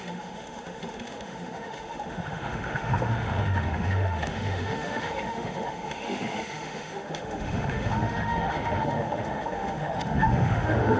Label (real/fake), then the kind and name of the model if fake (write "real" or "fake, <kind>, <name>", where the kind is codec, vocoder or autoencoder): fake, autoencoder, DAC-VAE